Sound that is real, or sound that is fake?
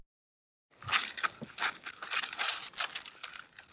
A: real